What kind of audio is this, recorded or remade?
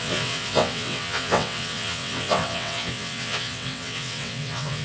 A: remade